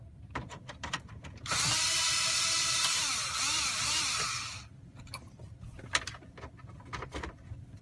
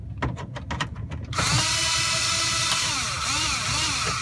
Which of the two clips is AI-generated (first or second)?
first